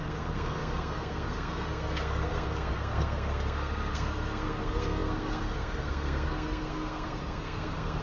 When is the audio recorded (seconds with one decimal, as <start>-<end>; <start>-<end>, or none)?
none